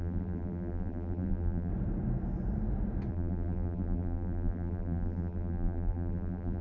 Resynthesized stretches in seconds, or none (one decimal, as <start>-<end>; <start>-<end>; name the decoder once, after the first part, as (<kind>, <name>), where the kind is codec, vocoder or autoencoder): 0.0-1.7 (vocoder, BigVGAN v2); 3.1-6.6